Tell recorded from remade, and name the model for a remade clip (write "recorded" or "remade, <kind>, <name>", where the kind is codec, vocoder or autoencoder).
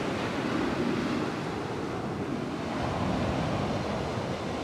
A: recorded